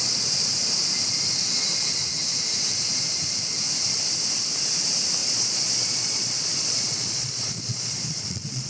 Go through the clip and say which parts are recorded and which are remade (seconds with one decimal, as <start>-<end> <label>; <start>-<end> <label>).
0.0-5.2 recorded; 5.2-8.7 remade